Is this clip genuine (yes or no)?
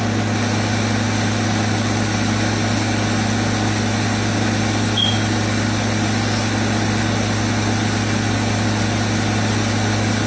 yes